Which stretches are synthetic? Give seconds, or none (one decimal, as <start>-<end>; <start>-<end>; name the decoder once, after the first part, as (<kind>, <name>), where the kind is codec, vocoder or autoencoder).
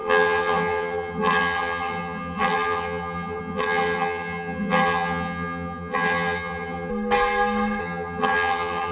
0.0-6.9 (vocoder, HiFi-GAN); 7.8-8.9